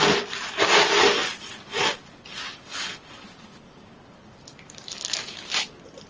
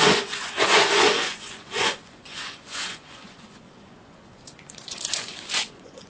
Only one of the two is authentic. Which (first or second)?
first